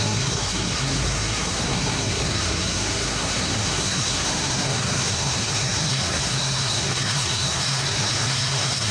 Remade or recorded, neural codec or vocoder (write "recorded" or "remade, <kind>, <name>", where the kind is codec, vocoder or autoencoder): remade, codec, SNAC